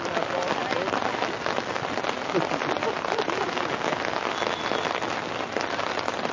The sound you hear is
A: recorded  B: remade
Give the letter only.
A